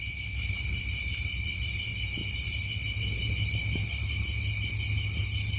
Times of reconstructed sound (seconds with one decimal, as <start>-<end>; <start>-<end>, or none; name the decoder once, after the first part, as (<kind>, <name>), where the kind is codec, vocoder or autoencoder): none

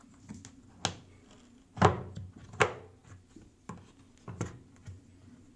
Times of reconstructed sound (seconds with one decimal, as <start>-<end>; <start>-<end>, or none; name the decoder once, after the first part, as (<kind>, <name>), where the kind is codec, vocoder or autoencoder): none